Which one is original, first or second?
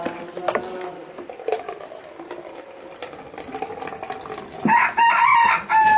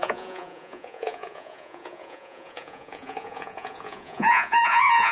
first